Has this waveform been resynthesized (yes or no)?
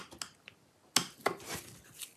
no